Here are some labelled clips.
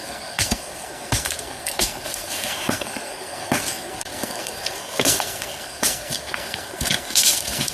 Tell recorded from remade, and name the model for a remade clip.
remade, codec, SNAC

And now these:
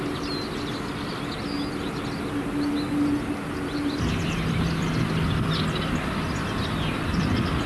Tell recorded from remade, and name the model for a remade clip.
recorded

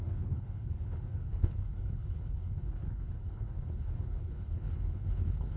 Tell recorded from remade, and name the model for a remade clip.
remade, codec, HILCodec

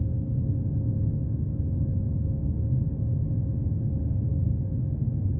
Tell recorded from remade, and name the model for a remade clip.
recorded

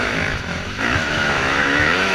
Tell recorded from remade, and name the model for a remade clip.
remade, autoencoder, DAC-VAE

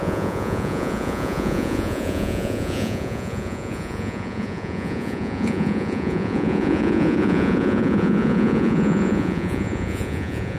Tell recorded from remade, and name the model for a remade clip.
remade, vocoder, Vocos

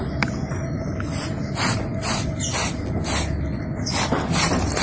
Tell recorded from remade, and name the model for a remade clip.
recorded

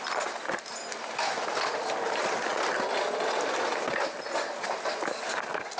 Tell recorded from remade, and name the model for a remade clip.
recorded